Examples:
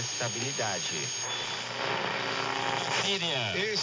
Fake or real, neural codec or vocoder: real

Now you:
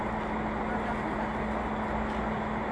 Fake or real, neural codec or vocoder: real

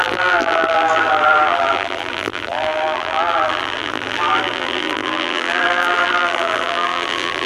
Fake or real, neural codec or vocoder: fake, vocoder, BigVGAN v2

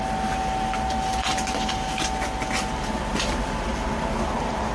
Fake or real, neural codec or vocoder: real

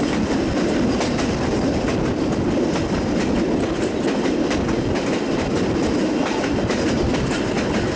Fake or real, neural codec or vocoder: real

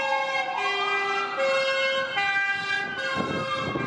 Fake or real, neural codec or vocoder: real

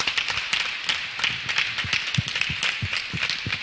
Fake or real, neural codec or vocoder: real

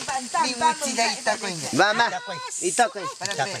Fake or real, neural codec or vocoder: fake, vocoder, BigVGAN v2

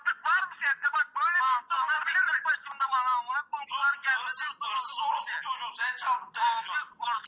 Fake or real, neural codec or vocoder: real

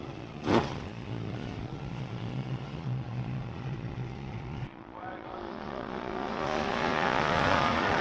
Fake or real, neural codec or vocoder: fake, vocoder, Vocos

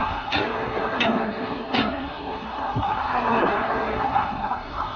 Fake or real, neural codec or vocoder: fake, codec, SNAC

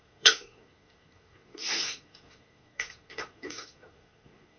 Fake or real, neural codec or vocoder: fake, codec, SNAC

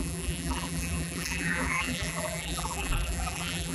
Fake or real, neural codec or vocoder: fake, vocoder, BigVGAN v2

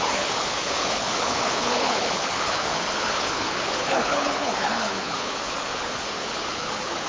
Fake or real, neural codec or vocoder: fake, codec, HILCodec